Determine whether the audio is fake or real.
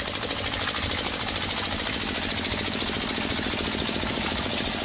real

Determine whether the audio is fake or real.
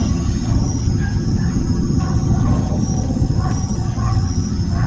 fake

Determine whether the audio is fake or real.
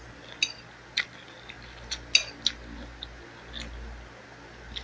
real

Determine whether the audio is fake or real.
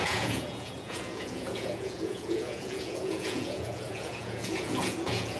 fake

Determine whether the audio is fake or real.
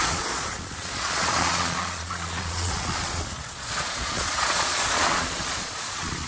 fake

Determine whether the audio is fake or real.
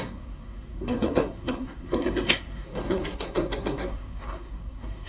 fake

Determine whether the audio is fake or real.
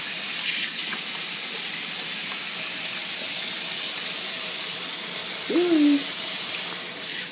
real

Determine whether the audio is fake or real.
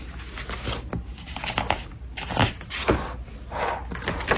real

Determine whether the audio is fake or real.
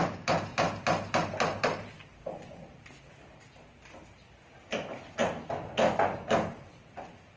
real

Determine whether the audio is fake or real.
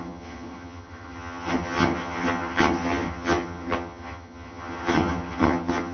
fake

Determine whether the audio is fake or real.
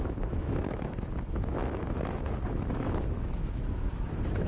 fake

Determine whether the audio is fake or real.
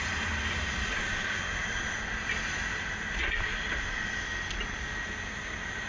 real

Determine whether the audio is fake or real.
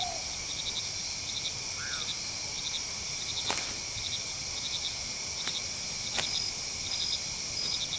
real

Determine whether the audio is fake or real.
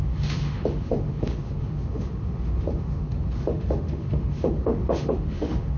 fake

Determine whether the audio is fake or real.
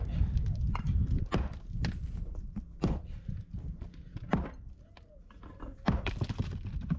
real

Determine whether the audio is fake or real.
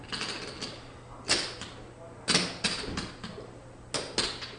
real